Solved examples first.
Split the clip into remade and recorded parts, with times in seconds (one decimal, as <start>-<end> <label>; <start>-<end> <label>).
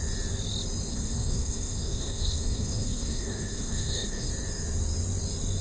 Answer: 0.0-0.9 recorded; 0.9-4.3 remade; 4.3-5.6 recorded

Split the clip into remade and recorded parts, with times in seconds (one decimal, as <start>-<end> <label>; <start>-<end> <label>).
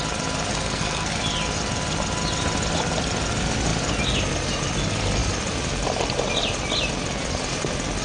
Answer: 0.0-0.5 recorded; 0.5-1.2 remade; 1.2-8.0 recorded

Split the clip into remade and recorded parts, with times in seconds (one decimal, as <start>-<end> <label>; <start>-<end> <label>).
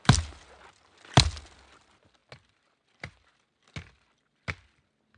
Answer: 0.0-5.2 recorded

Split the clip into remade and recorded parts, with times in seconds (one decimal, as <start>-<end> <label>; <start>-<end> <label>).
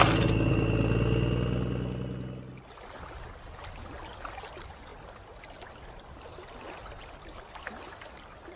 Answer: 0.0-8.6 recorded